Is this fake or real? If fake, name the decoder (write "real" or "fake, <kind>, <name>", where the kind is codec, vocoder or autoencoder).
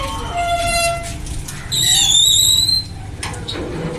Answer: real